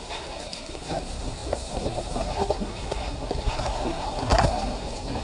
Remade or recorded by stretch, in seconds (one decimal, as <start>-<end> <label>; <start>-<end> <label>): 0.0-5.2 remade